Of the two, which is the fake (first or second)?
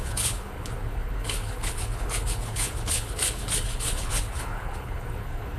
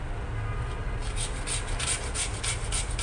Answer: first